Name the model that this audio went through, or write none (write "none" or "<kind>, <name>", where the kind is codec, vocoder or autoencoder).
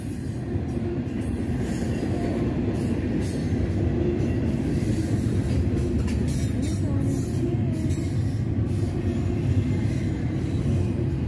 none